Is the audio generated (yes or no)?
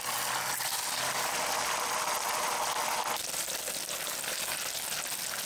no